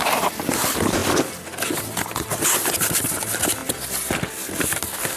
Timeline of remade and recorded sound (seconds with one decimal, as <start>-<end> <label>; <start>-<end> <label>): 0.0-5.2 recorded